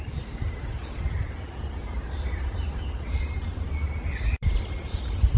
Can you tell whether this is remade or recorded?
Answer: remade